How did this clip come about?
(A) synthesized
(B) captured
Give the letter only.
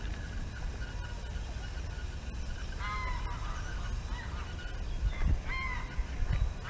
B